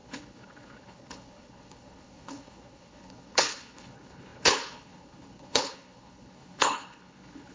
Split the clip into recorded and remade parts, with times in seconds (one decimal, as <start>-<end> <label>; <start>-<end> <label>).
0.0-7.5 remade